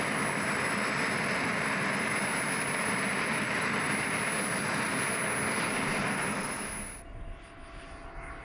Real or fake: real